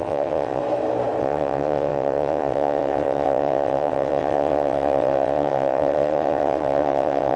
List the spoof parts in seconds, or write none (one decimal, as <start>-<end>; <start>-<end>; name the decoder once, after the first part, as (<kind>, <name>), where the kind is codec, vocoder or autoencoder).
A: 0.0-0.6 (vocoder, WaveNeXt); 1.2-7.4